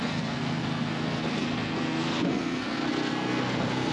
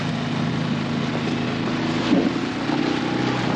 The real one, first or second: second